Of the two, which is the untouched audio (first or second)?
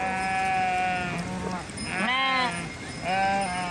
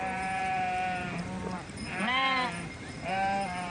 first